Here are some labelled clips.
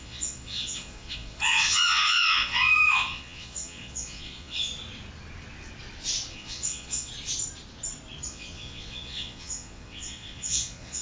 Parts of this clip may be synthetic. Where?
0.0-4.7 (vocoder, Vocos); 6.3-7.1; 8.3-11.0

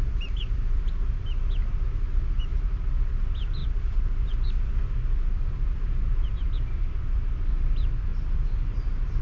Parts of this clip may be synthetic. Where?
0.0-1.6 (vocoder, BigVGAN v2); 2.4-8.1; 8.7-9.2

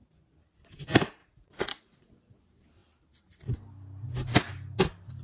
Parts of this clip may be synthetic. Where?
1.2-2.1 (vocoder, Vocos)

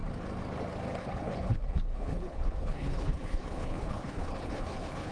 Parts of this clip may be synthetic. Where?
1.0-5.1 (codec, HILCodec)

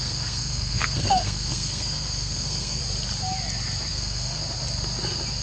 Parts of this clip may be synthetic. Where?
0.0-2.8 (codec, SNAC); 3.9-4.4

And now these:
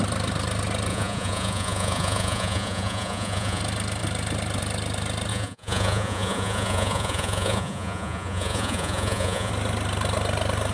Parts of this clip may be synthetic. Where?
0.9-3.6 (vocoder, Vocos); 5.3-9.5